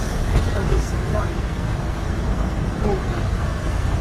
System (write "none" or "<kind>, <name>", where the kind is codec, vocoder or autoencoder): codec, SNAC